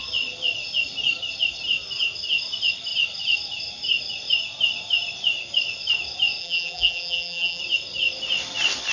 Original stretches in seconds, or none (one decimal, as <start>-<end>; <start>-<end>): 0.0-6.4; 7.6-8.9